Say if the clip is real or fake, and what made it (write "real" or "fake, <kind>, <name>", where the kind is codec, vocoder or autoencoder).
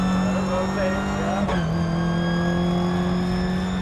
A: real